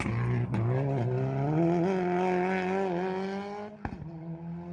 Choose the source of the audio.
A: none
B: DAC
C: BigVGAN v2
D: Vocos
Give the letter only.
A